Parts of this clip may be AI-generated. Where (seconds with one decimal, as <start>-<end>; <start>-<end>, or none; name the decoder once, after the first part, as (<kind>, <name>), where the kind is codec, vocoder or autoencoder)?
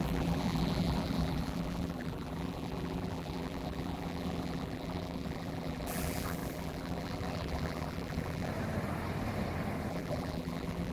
0.0-8.5 (vocoder, BigVGAN v2); 9.9-10.9